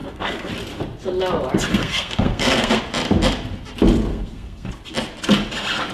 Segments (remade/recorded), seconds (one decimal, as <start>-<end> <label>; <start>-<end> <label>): 0.0-0.5 remade; 0.5-1.7 recorded; 1.7-2.8 remade; 2.8-4.1 recorded; 4.1-4.7 remade; 4.7-5.9 recorded